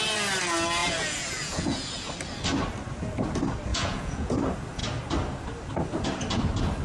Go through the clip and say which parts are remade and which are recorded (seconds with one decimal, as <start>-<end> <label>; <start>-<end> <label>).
0.0-0.8 recorded; 0.8-2.1 remade; 2.1-3.7 recorded; 3.7-4.3 remade; 4.3-6.8 recorded